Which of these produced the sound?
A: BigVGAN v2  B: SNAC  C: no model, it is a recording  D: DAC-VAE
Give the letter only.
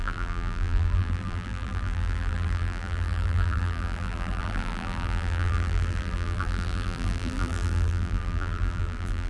A